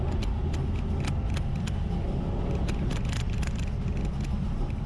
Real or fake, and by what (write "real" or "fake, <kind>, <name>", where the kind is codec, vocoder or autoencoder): real